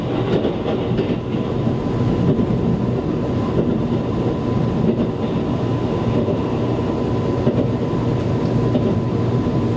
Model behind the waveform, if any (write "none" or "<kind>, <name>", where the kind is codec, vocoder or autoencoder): none